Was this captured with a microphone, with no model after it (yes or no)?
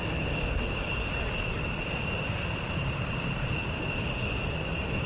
yes